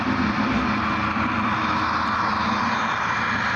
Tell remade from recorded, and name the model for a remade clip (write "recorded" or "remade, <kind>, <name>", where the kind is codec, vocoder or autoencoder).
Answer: recorded